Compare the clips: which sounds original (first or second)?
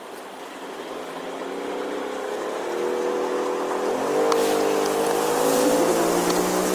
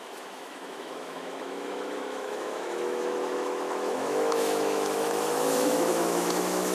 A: first